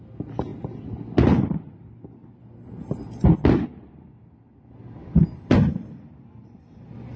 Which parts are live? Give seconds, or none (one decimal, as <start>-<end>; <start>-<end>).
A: 0.0-7.2